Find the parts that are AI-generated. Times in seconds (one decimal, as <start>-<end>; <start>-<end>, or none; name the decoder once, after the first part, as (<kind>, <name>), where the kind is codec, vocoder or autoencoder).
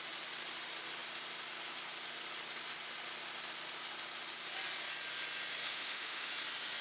5.7-6.3 (autoencoder, DAC-VAE)